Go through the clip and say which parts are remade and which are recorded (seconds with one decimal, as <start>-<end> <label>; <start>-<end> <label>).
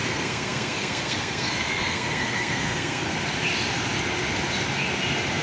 0.0-3.1 remade; 3.1-5.4 recorded